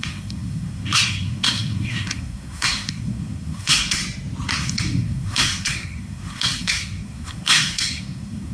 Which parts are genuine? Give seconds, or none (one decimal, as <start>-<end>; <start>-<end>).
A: 4.0-4.6